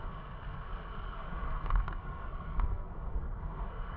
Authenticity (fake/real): fake